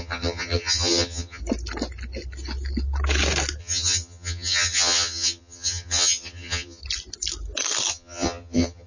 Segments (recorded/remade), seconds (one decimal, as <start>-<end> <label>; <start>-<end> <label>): 0.0-1.4 remade; 1.4-3.6 recorded; 3.6-6.8 remade; 6.8-7.9 recorded; 7.9-8.9 remade